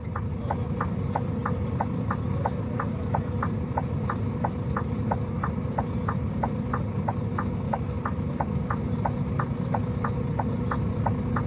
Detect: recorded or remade recorded